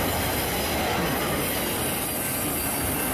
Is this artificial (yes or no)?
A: no